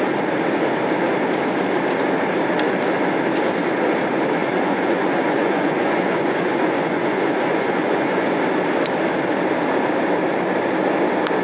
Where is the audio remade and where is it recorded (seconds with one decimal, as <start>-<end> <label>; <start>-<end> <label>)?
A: 0.0-4.4 recorded; 4.4-8.4 remade; 8.4-11.4 recorded